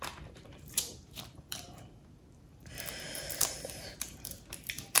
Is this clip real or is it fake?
fake